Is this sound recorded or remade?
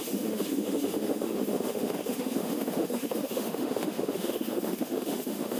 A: remade